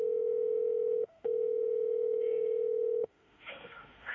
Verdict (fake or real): fake